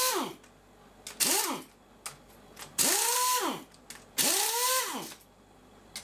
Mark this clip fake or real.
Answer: real